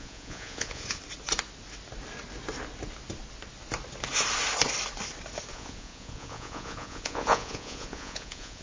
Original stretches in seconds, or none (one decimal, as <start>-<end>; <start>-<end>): 1.0-5.5